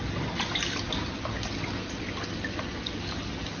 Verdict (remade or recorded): recorded